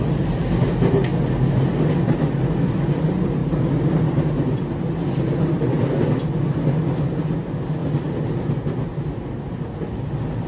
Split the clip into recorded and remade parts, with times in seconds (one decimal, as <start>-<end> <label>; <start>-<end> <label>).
0.0-10.5 recorded